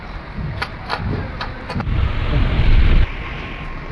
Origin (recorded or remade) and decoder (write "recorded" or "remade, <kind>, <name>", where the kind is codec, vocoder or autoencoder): remade, vocoder, BigVGAN v2